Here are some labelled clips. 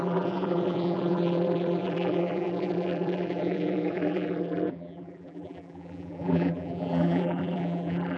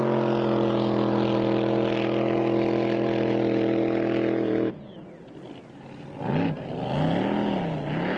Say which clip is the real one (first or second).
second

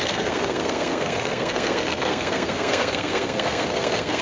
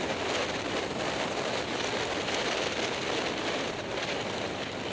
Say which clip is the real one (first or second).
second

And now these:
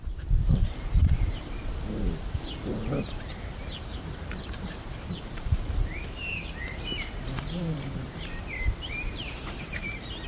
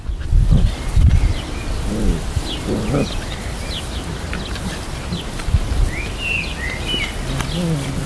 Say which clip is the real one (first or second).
second